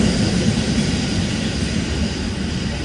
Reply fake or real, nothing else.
real